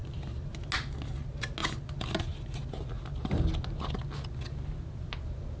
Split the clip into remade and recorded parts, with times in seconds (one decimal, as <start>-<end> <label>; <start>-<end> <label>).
0.0-0.5 remade; 0.5-5.6 recorded